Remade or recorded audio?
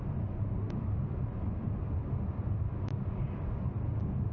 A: recorded